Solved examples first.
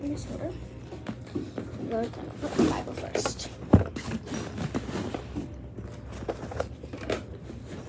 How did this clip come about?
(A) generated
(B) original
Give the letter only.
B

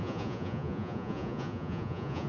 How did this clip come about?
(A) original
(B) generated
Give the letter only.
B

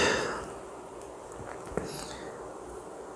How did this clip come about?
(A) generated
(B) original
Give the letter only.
B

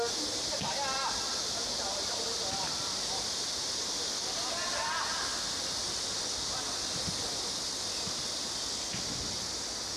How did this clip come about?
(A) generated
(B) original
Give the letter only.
B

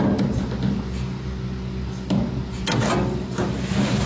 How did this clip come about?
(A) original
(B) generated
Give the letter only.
A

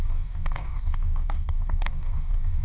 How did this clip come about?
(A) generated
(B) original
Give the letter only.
A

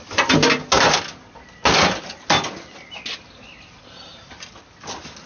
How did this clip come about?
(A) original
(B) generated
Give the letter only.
A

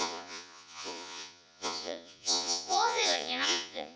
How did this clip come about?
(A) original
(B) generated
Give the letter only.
B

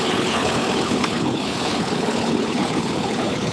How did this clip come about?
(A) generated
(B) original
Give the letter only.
A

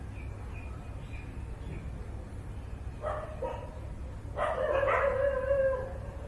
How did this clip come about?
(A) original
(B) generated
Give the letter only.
A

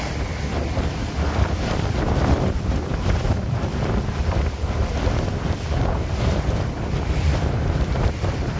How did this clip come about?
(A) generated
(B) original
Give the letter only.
A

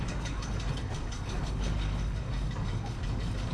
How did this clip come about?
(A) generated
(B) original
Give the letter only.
A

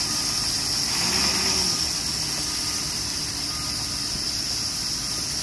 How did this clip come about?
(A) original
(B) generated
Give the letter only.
A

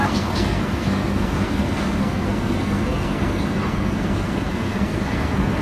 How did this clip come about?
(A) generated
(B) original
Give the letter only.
A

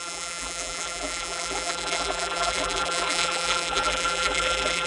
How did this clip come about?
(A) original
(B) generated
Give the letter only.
B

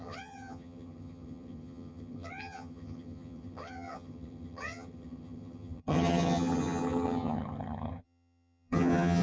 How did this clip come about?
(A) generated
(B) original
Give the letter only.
A